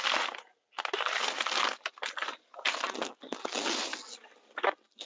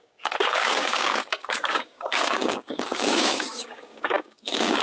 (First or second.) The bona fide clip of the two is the first